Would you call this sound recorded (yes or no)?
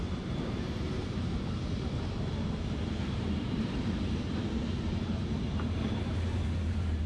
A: no